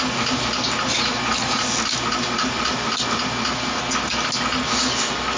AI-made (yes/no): no